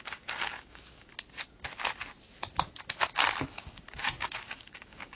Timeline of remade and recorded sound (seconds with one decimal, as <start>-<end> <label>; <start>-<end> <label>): 0.0-1.1 remade; 1.1-3.6 recorded; 3.6-5.1 remade